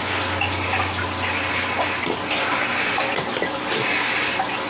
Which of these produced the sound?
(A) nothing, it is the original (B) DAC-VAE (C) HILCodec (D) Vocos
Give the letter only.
A